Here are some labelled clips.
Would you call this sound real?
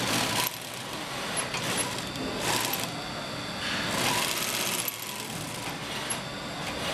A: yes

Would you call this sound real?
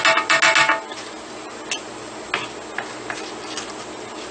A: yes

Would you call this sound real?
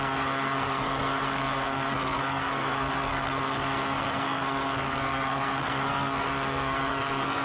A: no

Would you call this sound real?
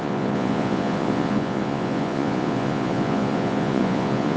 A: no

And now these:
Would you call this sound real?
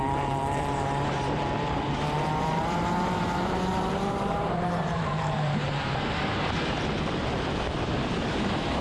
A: no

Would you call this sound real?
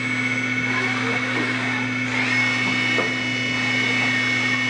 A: yes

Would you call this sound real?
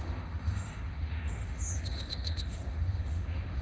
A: no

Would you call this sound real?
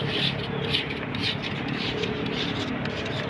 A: yes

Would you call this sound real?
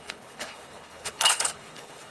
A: no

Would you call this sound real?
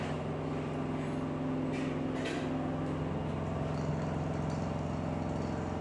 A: yes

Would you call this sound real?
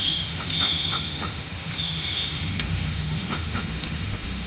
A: no